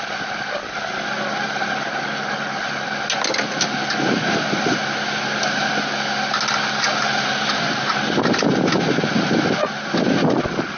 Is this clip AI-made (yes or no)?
no